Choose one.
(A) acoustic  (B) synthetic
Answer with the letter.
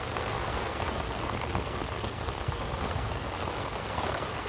B